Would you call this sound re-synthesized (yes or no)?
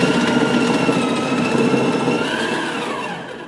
no